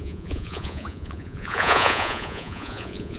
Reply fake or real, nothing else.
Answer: fake